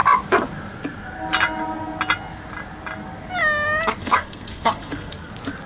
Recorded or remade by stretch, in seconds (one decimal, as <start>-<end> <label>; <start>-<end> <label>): 0.0-4.0 recorded; 4.0-5.3 remade; 5.3-5.7 recorded

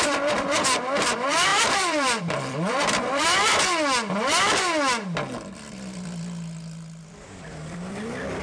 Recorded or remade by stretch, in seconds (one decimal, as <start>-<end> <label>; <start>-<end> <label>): 0.0-3.5 remade; 3.5-5.5 recorded; 5.5-8.4 remade

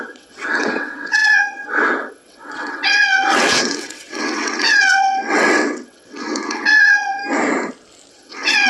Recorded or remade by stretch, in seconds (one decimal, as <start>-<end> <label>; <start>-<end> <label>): 0.0-7.2 remade; 7.2-8.1 recorded; 8.1-8.7 remade

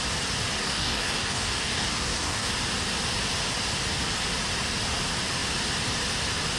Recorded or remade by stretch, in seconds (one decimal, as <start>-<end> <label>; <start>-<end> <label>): 0.0-0.6 recorded; 0.6-2.5 remade; 2.5-6.6 recorded

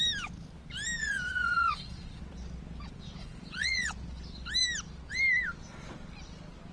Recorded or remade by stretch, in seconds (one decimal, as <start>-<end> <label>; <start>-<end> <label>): 0.0-1.0 recorded; 1.0-2.2 remade; 2.2-3.2 recorded; 3.2-3.9 remade; 3.9-6.7 recorded

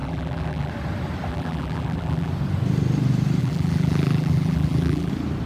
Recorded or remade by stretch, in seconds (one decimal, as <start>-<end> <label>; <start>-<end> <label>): 0.0-0.7 remade; 0.7-1.3 recorded; 1.3-2.3 remade; 2.3-3.4 recorded; 3.4-5.1 remade; 5.1-5.5 recorded

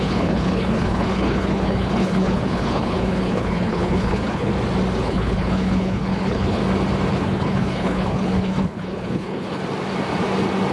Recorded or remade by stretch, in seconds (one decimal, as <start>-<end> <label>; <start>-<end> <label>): 0.0-4.5 remade; 4.5-5.0 recorded; 5.0-6.6 remade; 6.6-7.1 recorded; 7.1-9.6 remade; 9.6-10.7 recorded